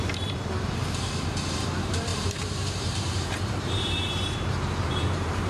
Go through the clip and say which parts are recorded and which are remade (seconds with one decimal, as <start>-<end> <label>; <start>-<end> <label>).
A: 0.0-2.1 recorded; 2.1-5.5 remade